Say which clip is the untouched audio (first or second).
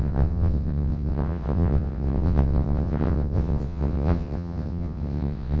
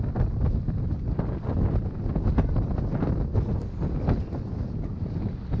second